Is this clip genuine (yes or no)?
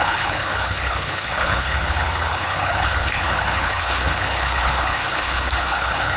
no